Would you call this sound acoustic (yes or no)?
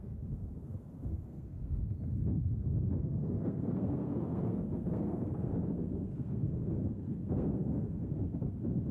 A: no